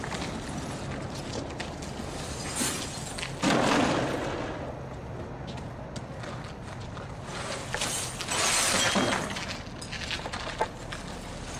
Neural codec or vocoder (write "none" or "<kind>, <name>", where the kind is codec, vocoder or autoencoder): none